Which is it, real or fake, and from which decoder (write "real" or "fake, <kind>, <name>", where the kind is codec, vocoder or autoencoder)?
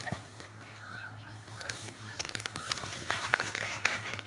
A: fake, codec, SNAC